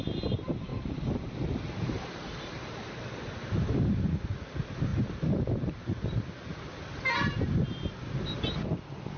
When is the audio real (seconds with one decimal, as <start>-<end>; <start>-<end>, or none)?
0.0-0.7; 2.7-4.9; 6.1-9.2